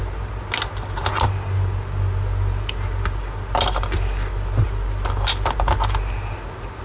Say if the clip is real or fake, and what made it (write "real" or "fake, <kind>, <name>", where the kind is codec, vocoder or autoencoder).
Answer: real